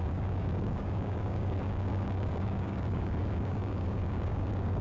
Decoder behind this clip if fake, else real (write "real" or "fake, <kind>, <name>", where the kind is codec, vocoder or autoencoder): fake, codec, DAC